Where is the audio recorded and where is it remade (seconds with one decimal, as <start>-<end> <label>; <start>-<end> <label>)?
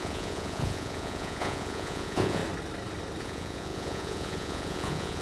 0.0-2.4 remade; 2.4-3.2 recorded; 3.2-5.2 remade